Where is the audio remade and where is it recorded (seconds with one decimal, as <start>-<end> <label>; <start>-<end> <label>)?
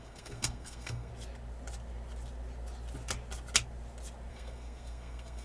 0.0-1.1 remade; 1.1-4.3 recorded; 4.3-5.4 remade